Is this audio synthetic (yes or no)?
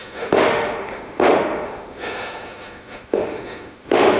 yes